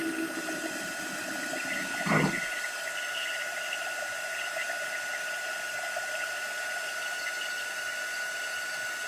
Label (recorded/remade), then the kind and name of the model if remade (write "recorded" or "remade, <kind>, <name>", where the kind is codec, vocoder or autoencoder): recorded